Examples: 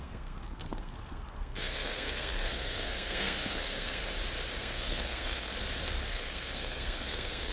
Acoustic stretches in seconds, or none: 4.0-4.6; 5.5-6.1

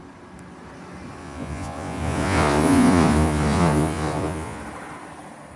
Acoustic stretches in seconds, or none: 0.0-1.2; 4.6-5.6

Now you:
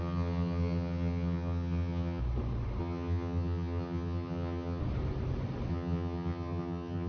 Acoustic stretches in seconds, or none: 2.2-2.8; 4.8-5.7

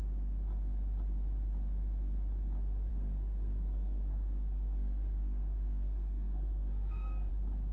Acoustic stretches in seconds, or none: 0.0-2.9; 7.3-7.7